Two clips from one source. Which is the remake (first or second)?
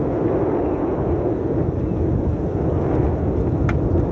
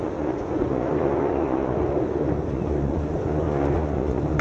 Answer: second